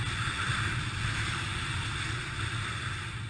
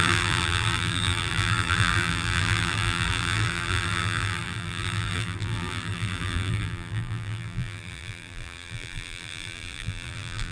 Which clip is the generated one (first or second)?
second